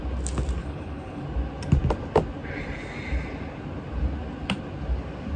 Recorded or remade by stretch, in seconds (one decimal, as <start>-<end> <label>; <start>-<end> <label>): 0.0-0.6 recorded; 0.6-1.2 remade; 1.2-5.4 recorded